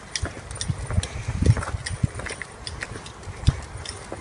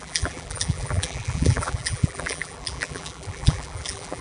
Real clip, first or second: first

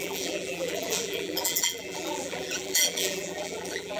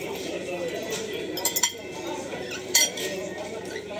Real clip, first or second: second